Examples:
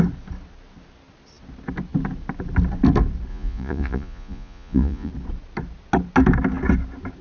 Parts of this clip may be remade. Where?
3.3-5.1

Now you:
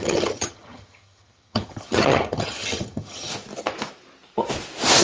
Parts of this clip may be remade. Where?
0.0-3.3